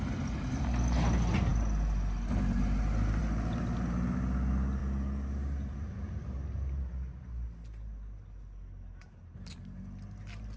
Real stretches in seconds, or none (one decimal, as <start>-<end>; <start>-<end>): 0.0-10.6